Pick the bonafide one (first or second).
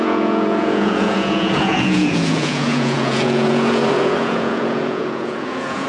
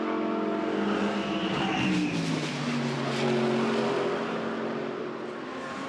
second